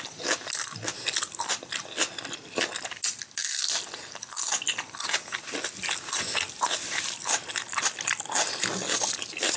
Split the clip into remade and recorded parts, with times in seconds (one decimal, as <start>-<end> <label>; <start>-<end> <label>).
0.0-9.6 recorded